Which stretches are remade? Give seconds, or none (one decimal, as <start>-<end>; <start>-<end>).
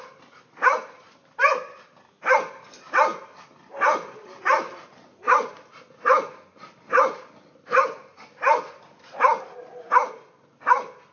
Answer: none